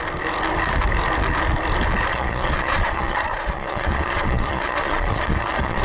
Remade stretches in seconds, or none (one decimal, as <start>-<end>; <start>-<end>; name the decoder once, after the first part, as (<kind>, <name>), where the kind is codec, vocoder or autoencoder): 2.1-5.8 (vocoder, Vocos)